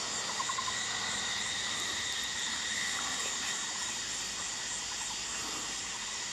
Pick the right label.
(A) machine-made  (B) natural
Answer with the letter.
B